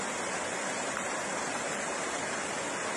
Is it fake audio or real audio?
real